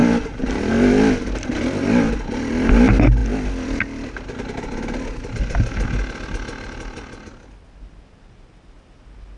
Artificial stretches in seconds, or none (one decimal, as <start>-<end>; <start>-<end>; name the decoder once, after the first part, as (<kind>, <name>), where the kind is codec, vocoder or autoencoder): none